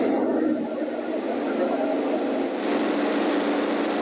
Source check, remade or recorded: recorded